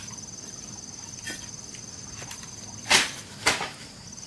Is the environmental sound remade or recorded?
recorded